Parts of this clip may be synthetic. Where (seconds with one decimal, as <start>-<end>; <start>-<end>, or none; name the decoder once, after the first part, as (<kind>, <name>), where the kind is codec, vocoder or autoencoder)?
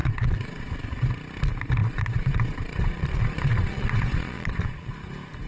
0.0-1.1 (vocoder, Vocos); 1.8-4.9